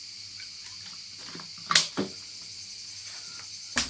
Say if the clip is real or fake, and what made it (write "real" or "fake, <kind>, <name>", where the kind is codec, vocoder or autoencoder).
real